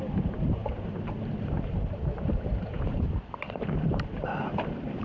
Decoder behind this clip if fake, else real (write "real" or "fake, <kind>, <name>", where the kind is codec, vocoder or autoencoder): fake, vocoder, BigVGAN v2